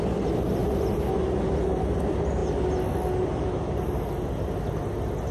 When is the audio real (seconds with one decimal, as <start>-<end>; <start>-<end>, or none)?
0.0-0.6; 1.4-5.3